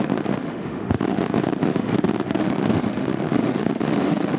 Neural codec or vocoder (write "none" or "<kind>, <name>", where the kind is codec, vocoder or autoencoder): autoencoder, DAC-VAE